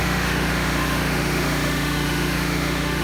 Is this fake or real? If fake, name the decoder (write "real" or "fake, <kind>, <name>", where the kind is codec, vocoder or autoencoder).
fake, autoencoder, DAC-VAE